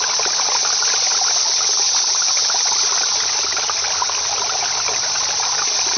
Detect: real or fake real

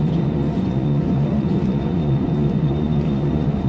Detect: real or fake fake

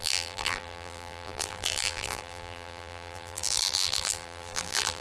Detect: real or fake fake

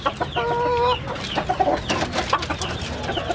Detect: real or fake real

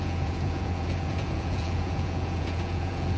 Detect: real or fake fake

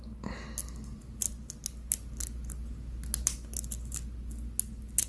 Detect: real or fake real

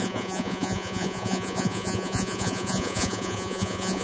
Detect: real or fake fake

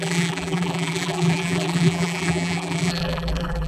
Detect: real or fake fake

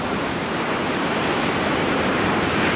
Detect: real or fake real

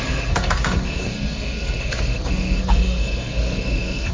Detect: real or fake fake